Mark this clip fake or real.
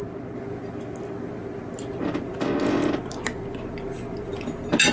real